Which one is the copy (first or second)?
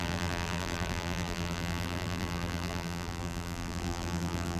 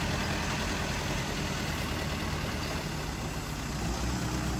first